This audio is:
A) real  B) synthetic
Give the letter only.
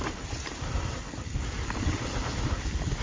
A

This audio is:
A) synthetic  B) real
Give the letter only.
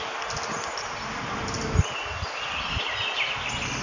B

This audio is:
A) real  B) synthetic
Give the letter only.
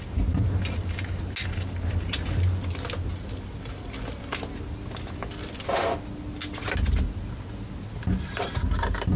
A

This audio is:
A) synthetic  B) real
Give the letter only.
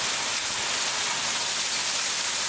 B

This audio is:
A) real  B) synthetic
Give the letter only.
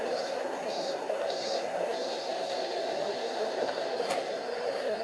B